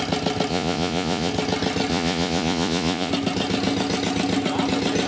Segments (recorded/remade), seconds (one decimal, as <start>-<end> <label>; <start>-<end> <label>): 0.0-0.5 recorded; 0.5-1.3 remade; 1.3-1.9 recorded; 1.9-3.1 remade; 3.1-5.1 recorded